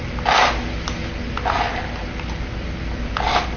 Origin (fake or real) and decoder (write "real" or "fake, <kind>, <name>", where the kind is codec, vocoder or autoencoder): real